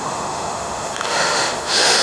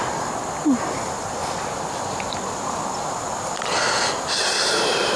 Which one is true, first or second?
second